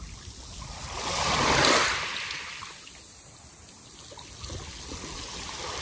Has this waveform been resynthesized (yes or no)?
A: no